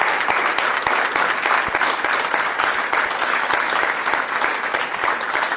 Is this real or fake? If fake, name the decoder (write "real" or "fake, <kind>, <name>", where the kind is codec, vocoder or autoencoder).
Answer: real